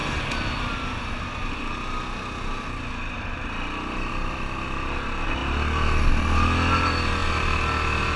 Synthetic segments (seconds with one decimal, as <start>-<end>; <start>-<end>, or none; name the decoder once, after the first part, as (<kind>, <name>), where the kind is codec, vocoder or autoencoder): none